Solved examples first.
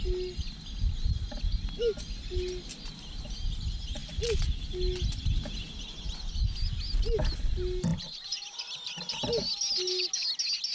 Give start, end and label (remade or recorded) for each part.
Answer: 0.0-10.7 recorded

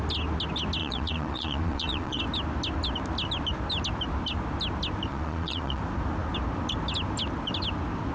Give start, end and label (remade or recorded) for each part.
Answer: 0.0-0.8 recorded; 0.8-2.2 remade; 2.2-5.1 recorded; 5.1-5.8 remade; 5.8-8.1 recorded

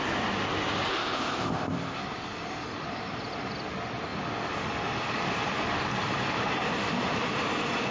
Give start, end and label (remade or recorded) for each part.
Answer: 0.0-0.9 recorded; 0.9-2.0 remade; 2.0-7.9 recorded